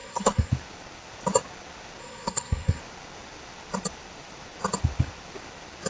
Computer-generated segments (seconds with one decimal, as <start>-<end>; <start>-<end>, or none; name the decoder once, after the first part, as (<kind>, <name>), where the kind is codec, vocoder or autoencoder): 0.0-0.5 (codec, SNAC); 2.0-2.8